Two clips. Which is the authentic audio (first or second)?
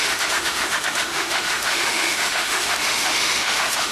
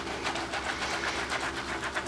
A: second